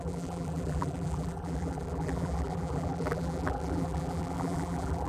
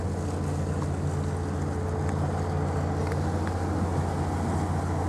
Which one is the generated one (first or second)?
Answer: first